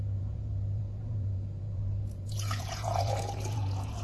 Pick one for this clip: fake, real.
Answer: fake